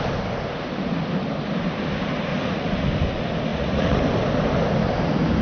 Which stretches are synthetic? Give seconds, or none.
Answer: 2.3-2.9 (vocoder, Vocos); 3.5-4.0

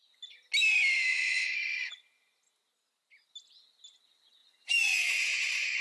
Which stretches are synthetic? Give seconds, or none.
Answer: 1.1-2.0 (vocoder, Vocos); 4.4-5.8

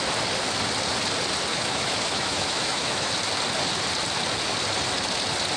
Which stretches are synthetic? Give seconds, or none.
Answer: 1.5-3.1 (autoencoder, DAC-VAE)